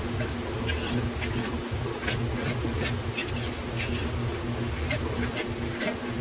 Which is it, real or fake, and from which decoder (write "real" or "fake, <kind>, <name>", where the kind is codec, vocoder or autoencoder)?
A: real